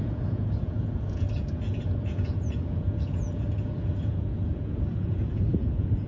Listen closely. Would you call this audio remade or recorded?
remade